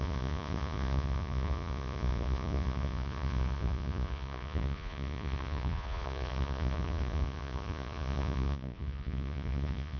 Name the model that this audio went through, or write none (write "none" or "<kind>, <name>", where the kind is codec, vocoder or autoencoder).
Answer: vocoder, Vocos